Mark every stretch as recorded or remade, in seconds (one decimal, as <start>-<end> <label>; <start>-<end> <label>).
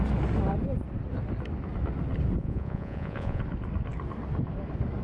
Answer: 0.0-2.4 recorded; 2.4-3.4 remade; 3.4-5.0 recorded